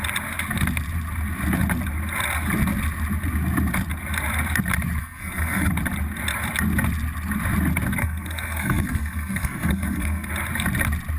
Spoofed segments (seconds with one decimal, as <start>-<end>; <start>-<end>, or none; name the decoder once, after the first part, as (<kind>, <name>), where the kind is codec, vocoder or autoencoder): 5.0-5.7 (codec, SNAC); 8.0-10.3